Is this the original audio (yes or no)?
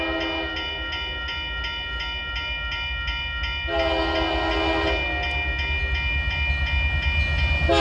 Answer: yes